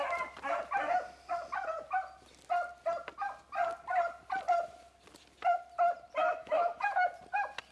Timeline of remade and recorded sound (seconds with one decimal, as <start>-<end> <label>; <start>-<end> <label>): 0.0-6.2 recorded; 6.2-7.1 remade; 7.1-7.7 recorded